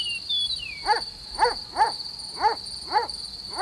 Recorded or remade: recorded